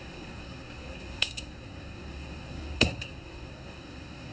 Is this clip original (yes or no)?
no